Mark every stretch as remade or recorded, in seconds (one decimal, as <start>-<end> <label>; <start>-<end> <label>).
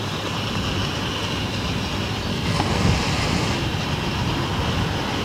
0.0-2.3 recorded; 2.3-2.9 remade; 2.9-5.2 recorded